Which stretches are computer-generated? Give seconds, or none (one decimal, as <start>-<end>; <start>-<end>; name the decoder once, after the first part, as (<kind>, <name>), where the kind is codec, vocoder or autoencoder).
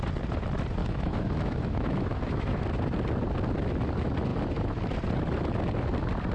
0.8-2.6 (autoencoder, DAC-VAE)